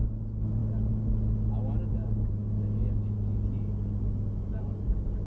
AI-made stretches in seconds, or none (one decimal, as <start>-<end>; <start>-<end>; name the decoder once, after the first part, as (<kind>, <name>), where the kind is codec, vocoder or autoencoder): 2.4-3.0 (autoencoder, DAC-VAE)